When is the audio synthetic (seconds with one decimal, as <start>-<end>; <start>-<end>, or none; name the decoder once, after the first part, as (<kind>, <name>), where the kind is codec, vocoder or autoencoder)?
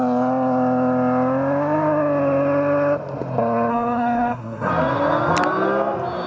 3.7-4.7 (codec, SNAC)